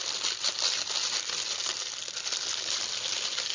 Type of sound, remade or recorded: recorded